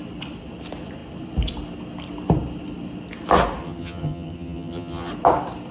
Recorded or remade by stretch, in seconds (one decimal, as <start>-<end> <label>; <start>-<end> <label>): 0.0-3.6 recorded; 3.6-5.1 remade; 5.1-5.7 recorded